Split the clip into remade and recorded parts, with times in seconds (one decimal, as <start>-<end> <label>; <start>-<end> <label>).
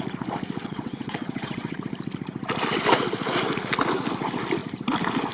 0.0-0.6 recorded; 0.6-1.8 remade; 1.8-5.3 recorded